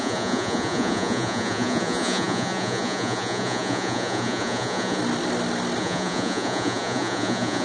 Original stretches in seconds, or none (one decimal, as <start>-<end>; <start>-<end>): 5.0-5.8